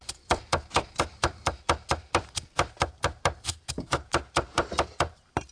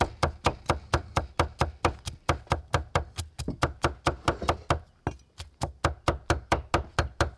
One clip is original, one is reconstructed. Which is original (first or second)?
second